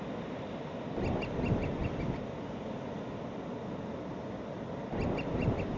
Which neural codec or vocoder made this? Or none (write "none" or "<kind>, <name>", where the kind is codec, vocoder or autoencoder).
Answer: none